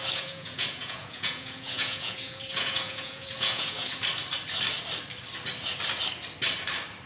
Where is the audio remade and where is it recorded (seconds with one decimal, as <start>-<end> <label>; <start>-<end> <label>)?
0.0-3.9 remade; 3.9-7.1 recorded